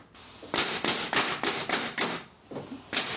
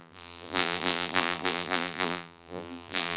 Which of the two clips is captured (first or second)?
first